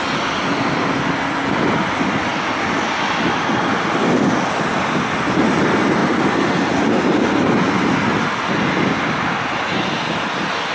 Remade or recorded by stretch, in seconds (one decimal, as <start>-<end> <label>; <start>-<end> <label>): 0.0-10.7 recorded